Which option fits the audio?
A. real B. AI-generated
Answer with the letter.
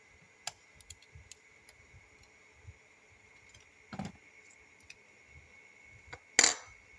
A